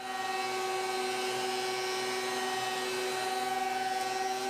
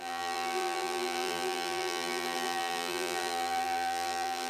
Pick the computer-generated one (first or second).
second